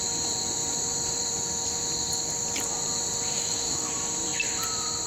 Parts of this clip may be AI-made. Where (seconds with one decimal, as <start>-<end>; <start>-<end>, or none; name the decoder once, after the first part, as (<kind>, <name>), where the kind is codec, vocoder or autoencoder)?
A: 3.3-3.9 (autoencoder, DAC-VAE)